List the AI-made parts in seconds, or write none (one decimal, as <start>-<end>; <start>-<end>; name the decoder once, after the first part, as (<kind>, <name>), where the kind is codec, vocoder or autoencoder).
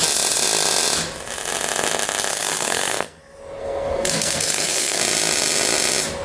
2.3-3.2 (codec, SNAC); 3.6-5.0